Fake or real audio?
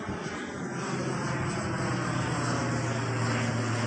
real